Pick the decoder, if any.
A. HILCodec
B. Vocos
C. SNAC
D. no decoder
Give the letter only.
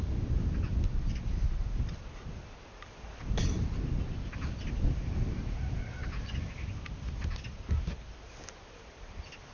D